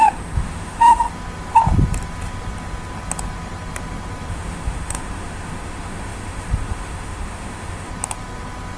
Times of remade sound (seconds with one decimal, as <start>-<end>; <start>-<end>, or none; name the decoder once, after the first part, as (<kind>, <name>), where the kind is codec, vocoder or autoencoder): 0.0-1.1 (autoencoder, DAC-VAE); 4.3-7.9